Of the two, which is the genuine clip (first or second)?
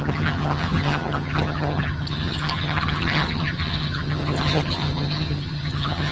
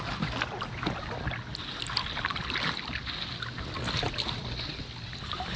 second